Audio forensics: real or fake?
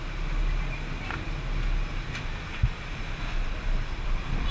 real